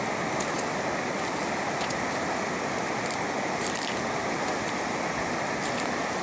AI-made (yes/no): no